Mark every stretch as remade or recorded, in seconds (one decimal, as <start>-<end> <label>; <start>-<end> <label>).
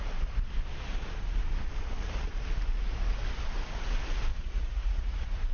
0.0-4.3 recorded; 4.3-5.5 remade